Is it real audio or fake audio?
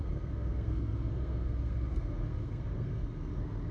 fake